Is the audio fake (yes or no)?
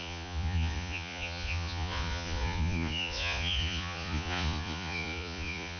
yes